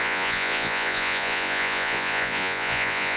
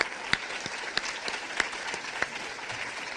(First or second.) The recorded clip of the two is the second